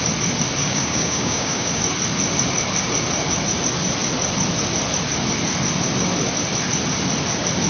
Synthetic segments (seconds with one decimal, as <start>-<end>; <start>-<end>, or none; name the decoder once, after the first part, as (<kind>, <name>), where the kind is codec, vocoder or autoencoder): 0.6-1.8 (codec, DAC)